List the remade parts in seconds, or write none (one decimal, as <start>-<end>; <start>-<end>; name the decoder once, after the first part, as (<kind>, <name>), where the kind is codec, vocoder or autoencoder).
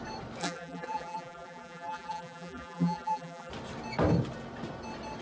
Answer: 0.4-3.5 (vocoder, BigVGAN v2)